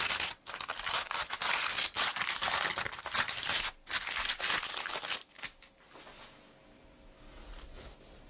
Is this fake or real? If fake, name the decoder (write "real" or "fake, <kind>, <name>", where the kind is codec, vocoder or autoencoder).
real